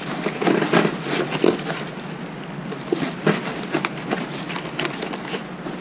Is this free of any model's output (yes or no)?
yes